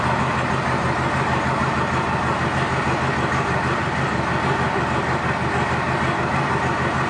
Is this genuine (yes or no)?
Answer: yes